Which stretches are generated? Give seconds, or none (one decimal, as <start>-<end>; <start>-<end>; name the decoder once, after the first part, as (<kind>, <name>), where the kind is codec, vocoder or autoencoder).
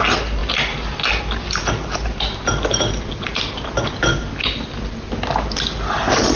none